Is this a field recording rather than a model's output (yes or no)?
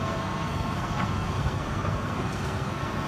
no